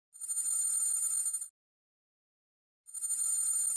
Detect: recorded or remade recorded